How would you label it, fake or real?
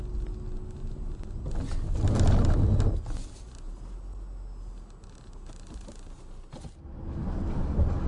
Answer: real